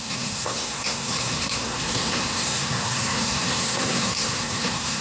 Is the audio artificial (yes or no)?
yes